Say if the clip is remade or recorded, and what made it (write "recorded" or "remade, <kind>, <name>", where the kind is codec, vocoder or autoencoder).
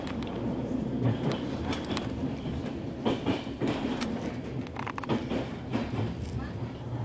recorded